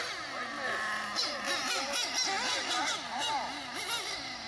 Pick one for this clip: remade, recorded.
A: recorded